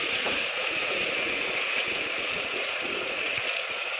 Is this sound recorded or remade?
remade